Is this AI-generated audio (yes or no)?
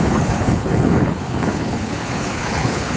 yes